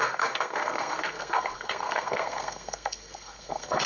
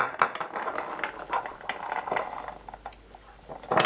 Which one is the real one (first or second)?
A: second